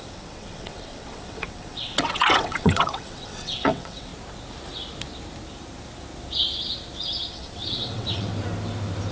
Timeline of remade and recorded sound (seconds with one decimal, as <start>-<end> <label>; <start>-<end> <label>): 0.0-4.1 remade; 4.1-7.3 recorded; 7.3-8.3 remade; 8.3-9.1 recorded